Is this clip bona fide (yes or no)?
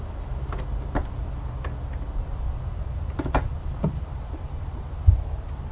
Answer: no